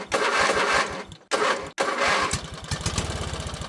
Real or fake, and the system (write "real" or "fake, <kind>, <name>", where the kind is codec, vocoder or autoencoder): real